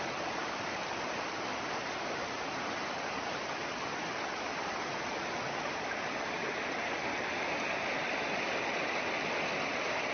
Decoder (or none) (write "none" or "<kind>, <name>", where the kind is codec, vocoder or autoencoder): none